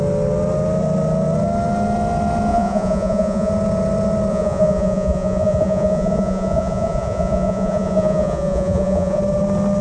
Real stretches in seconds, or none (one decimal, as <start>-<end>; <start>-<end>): 0.0-2.5; 3.5-4.3; 9.2-9.8